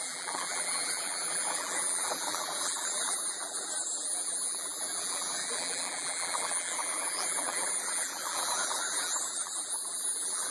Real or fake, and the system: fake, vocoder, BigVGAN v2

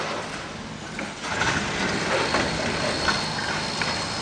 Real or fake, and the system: real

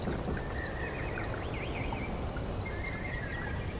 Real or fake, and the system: real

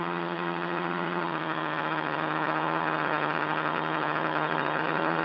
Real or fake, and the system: fake, vocoder, HiFi-GAN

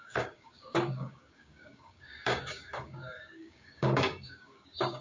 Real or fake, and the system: fake, codec, DAC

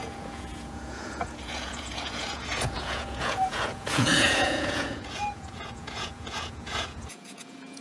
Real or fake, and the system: fake, vocoder, Vocos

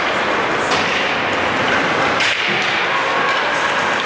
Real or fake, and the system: real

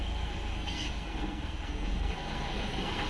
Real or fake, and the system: fake, codec, SNAC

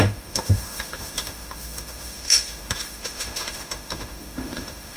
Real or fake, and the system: fake, autoencoder, DAC-VAE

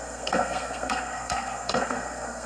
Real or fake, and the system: fake, codec, SNAC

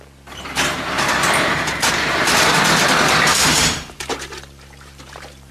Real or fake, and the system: fake, vocoder, BigVGAN v2